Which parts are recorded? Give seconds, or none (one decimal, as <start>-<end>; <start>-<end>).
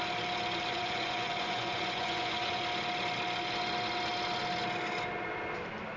0.0-0.7; 2.6-6.0